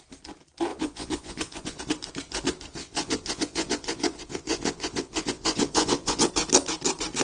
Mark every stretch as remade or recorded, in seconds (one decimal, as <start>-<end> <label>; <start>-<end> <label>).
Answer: 0.0-0.7 recorded; 0.7-1.8 remade; 1.8-2.8 recorded; 2.8-6.3 remade; 6.3-7.2 recorded